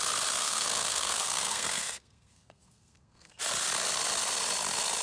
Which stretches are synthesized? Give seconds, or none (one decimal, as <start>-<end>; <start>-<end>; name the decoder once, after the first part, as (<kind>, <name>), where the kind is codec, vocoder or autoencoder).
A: 0.4-3.4 (codec, SNAC)